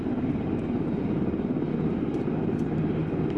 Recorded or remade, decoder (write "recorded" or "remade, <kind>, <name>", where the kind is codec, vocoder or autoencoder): recorded